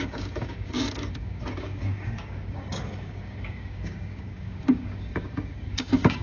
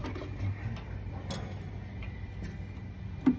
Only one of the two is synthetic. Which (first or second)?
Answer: first